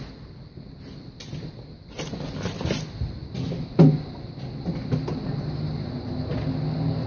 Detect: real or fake real